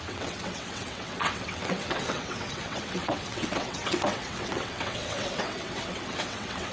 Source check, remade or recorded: remade